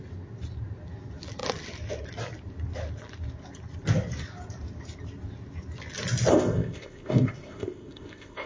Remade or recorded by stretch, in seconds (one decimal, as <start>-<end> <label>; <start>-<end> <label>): 0.0-6.3 recorded; 6.3-8.5 remade

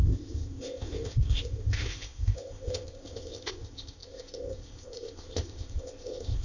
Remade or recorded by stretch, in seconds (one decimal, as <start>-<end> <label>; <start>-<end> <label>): 0.0-6.4 remade

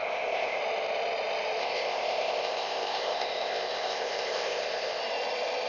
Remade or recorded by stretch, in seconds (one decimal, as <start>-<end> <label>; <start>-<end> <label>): 0.0-0.6 remade; 0.6-1.6 recorded; 1.6-5.0 remade; 5.0-5.7 recorded

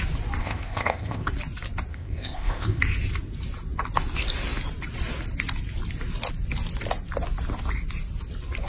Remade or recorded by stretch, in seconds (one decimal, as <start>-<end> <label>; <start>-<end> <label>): 0.0-0.4 recorded; 0.4-1.3 remade; 1.3-1.9 recorded; 1.9-2.8 remade; 2.8-8.7 recorded